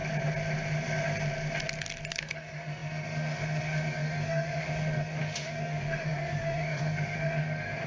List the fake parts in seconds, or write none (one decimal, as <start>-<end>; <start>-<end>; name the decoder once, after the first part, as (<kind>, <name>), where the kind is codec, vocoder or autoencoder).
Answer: 2.2-7.9 (autoencoder, DAC-VAE)